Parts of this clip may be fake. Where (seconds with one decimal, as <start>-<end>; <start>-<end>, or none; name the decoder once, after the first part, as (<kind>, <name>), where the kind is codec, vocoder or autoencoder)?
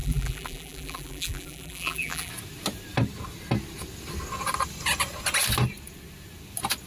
0.0-2.3 (vocoder, BigVGAN v2)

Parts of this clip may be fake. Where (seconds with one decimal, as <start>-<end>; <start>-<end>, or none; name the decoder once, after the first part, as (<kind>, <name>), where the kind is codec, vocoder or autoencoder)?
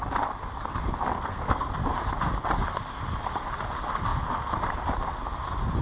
1.1-1.7 (codec, SNAC)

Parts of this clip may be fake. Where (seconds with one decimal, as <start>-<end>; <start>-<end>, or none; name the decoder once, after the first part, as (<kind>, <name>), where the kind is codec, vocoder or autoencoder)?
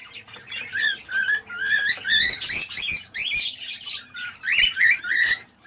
0.0-0.6 (vocoder, BigVGAN v2); 2.9-5.7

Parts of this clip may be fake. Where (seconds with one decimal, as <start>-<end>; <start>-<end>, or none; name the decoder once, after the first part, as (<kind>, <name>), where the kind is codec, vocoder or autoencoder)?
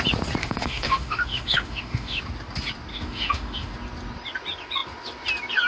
0.4-2.2 (autoencoder, DAC-VAE); 2.9-3.7